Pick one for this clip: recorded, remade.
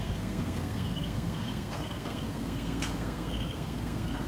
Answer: remade